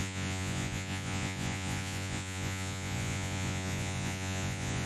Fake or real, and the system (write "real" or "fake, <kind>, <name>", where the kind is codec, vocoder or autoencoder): fake, vocoder, Vocos